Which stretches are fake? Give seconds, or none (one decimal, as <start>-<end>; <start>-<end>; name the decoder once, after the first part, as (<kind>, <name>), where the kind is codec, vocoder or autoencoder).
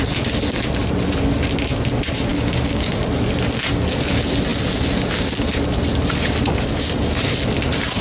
2.3-2.9 (codec, DAC)